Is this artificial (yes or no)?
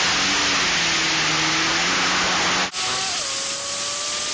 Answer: no